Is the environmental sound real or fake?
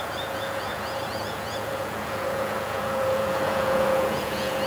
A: fake